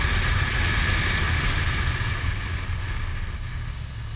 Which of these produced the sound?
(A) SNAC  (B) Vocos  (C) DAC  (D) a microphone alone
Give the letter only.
D